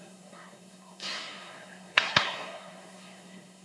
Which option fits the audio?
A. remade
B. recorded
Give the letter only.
A